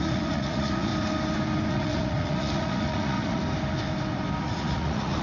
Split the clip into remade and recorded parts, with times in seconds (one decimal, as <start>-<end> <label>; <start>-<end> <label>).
0.0-0.9 remade; 0.9-1.7 recorded; 1.7-3.4 remade; 3.4-4.4 recorded; 4.4-5.2 remade